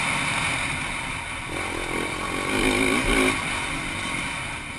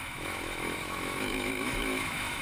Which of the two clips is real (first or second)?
first